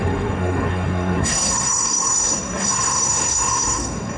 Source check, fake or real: fake